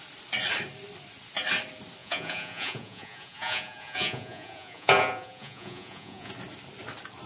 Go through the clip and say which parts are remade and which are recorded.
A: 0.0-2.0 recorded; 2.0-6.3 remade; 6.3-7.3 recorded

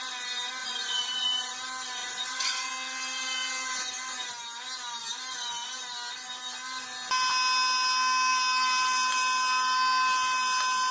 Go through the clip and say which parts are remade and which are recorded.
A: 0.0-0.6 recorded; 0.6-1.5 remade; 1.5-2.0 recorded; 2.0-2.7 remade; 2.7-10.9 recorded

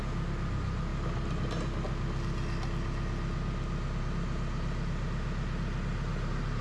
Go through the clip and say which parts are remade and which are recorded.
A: 0.0-6.6 recorded

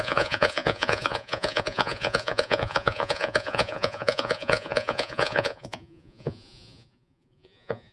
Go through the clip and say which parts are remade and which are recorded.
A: 0.0-7.9 remade

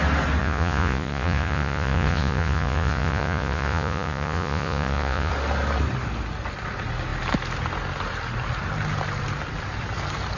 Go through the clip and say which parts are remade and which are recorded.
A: 0.0-0.4 recorded; 0.4-5.3 remade; 5.3-10.4 recorded

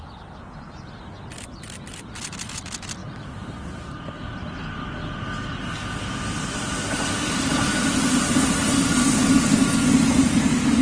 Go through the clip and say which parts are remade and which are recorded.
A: 0.0-10.8 recorded